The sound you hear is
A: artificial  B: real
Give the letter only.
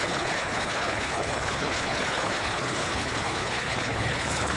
A